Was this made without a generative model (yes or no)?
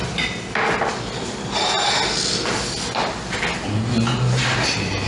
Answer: yes